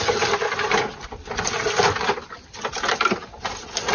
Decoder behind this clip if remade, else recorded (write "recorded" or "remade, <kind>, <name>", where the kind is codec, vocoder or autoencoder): recorded